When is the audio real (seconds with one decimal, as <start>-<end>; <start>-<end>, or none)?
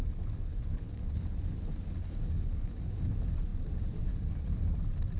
0.0-0.5; 1.2-2.0; 2.8-5.2